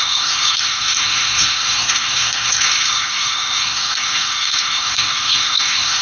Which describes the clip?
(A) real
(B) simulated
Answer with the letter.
B